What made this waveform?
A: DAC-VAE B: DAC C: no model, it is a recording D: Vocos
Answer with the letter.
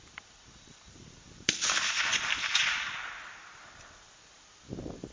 C